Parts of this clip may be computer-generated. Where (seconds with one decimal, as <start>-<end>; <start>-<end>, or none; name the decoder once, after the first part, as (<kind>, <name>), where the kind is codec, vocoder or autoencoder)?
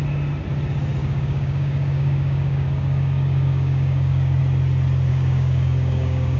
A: 1.0-4.4 (codec, DAC); 5.1-6.4